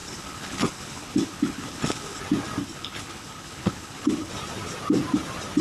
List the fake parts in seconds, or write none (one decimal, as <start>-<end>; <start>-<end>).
0.0-2.2; 2.6-4.3